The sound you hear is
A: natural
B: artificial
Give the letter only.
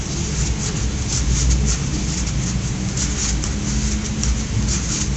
A